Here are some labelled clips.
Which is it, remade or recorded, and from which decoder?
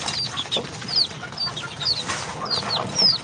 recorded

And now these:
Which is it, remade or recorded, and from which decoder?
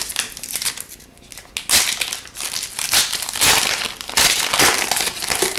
recorded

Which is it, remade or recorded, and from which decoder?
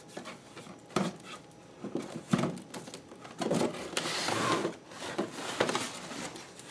recorded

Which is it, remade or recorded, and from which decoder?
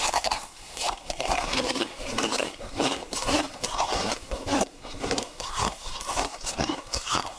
remade, codec, SNAC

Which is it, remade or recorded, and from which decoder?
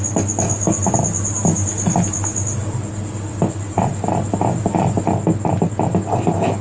recorded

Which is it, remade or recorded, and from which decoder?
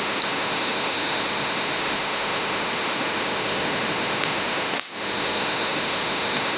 remade, autoencoder, DAC-VAE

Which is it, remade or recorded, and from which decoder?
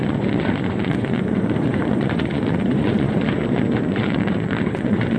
remade, vocoder, Vocos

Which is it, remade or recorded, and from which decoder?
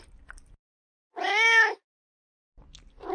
recorded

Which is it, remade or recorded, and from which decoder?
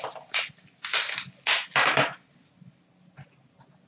recorded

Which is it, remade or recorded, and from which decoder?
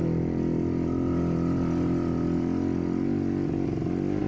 recorded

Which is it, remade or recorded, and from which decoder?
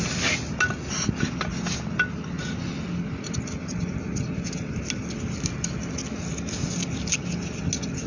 recorded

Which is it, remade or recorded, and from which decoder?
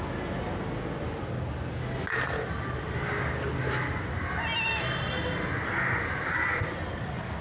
recorded